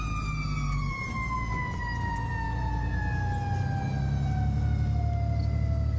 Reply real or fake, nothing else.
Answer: real